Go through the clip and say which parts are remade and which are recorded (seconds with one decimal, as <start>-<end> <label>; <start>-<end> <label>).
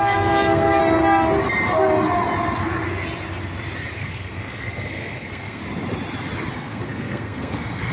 0.0-0.8 remade; 0.8-4.0 recorded; 4.0-5.6 remade; 5.6-6.5 recorded; 6.5-7.9 remade